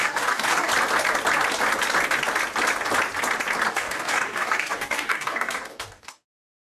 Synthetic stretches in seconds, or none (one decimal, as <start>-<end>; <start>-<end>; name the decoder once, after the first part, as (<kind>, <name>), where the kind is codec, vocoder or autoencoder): 0.0-0.7 (codec, DAC); 3.7-6.7